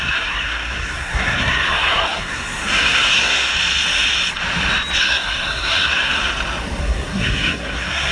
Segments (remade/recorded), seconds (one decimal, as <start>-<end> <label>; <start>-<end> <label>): 0.0-3.5 remade; 3.5-5.0 recorded; 5.0-6.2 remade; 6.2-6.8 recorded; 6.8-8.1 remade